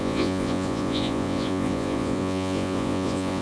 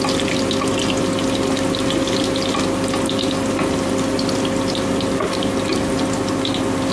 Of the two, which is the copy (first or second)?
first